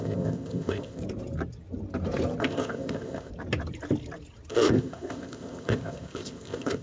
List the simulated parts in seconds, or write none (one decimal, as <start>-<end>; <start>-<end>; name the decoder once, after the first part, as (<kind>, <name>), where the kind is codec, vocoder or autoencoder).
0.0-1.0 (codec, ZipCodec); 2.4-3.3; 4.5-6.8